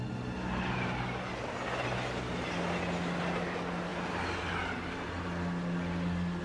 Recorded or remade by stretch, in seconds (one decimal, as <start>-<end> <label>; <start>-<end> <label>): 0.0-6.4 recorded